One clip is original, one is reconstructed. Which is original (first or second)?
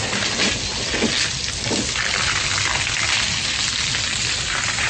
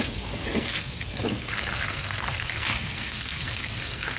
first